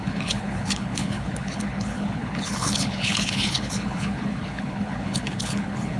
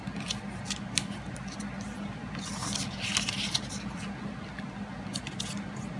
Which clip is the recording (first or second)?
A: second